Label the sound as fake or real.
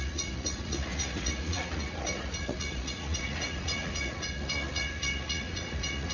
fake